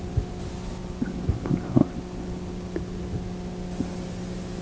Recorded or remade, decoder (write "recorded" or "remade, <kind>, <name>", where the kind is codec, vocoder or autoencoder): recorded